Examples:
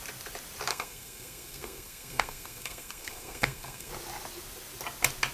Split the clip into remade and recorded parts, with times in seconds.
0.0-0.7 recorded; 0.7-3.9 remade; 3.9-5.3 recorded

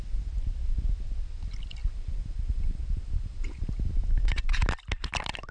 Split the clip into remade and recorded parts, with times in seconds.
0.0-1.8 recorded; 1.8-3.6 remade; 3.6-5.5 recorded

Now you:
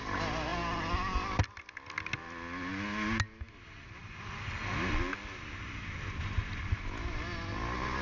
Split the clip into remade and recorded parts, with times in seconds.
0.0-8.0 recorded

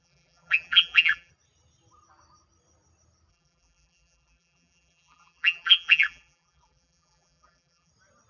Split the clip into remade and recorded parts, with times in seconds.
0.0-1.3 remade; 1.3-3.3 recorded; 3.3-7.9 remade; 7.9-8.3 recorded

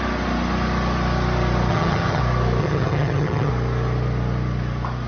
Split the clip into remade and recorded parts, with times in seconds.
0.0-1.7 recorded; 1.7-2.2 remade; 2.2-2.6 recorded; 2.6-3.5 remade; 3.5-5.1 recorded